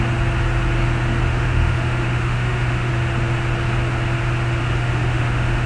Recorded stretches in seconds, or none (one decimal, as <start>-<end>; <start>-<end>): 0.0-1.3; 2.9-4.6